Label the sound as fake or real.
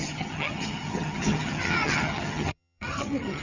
fake